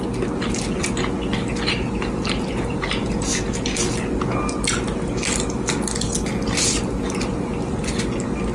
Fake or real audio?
real